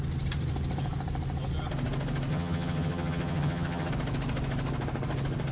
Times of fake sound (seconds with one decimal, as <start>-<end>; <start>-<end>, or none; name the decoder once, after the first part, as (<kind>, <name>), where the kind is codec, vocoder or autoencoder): 2.3-3.9 (vocoder, HiFi-GAN)